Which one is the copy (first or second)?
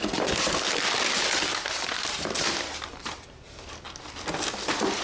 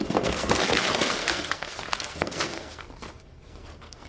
second